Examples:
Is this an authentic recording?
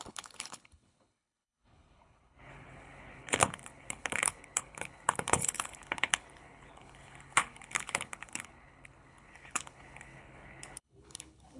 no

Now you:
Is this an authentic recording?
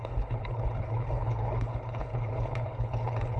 no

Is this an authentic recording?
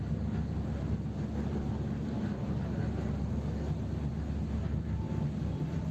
yes